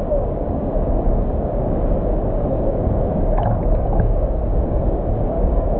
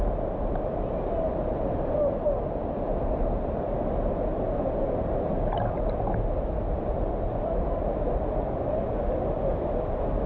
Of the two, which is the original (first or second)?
second